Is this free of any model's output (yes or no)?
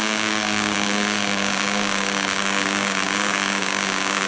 no